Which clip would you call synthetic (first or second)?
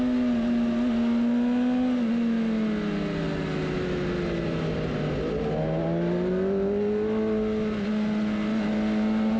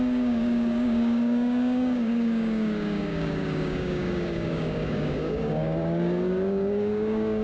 second